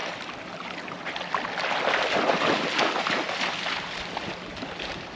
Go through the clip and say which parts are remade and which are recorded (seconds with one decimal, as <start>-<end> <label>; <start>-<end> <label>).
0.0-5.2 recorded